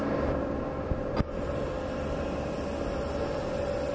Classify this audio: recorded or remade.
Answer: recorded